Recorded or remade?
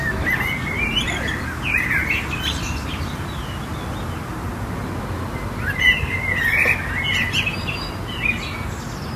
recorded